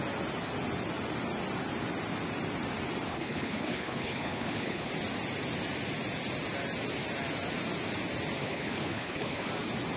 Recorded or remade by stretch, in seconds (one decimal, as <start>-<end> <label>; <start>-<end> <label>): 0.0-3.1 recorded; 3.1-4.9 remade; 4.9-8.4 recorded; 8.4-9.5 remade; 9.5-10.0 recorded